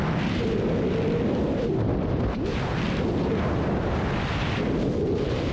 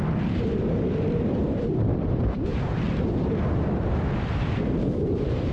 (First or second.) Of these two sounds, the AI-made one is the second